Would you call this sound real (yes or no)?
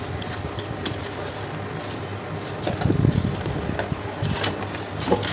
yes